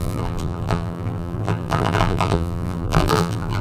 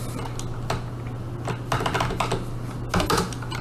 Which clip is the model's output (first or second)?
first